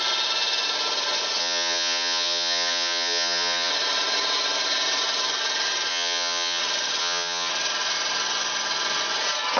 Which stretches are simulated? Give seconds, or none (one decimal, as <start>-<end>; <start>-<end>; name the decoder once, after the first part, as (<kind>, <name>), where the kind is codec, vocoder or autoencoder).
1.4-3.7 (vocoder, HiFi-GAN); 5.9-6.6; 7.0-7.5